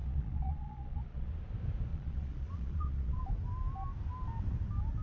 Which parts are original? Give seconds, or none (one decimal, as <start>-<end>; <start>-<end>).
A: 1.4-1.9; 3.3-5.0